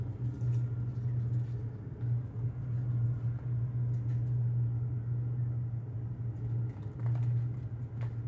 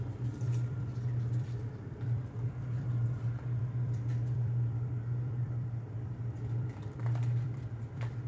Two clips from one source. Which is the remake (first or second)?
second